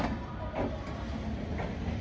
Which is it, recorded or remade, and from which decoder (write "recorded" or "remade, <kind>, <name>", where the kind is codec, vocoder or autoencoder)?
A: recorded